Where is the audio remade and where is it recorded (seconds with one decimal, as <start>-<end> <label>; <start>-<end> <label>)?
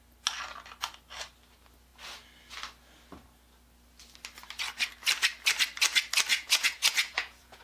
0.0-6.3 recorded; 6.3-7.6 remade